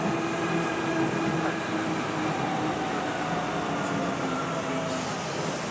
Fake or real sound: real